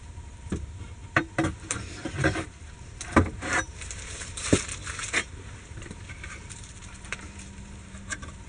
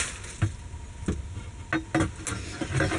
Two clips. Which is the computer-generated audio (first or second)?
first